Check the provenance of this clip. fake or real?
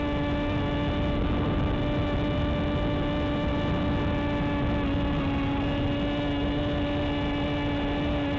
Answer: real